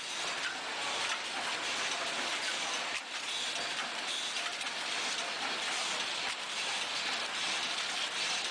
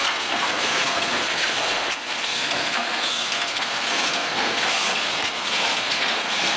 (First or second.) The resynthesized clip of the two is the second